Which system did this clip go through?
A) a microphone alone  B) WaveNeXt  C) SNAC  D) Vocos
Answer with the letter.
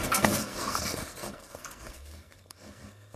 C